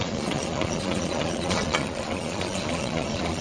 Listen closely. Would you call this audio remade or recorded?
remade